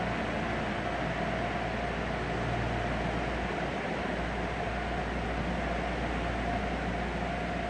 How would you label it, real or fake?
real